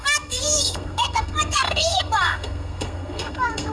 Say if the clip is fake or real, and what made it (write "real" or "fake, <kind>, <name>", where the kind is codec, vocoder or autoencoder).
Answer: fake, codec, SNAC